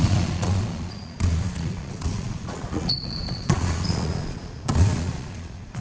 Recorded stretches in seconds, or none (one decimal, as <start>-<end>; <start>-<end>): none